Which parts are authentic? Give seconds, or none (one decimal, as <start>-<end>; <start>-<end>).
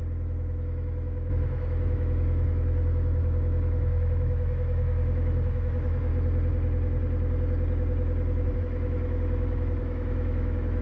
6.1-8.6